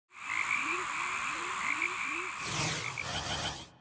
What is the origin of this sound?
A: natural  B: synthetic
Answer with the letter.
A